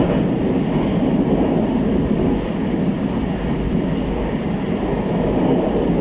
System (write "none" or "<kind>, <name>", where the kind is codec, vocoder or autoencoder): none